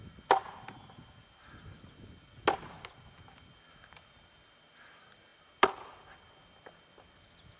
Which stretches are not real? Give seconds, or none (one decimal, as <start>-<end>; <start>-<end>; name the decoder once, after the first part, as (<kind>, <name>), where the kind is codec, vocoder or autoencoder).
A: none